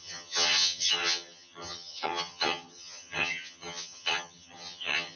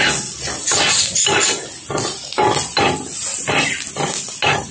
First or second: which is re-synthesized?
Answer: first